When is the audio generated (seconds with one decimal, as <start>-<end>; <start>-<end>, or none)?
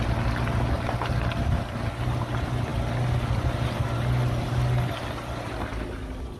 none